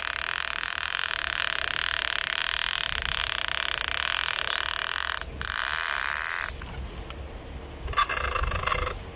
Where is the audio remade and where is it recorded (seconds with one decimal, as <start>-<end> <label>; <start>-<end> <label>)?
0.0-0.5 recorded; 0.5-1.4 remade; 1.4-9.2 recorded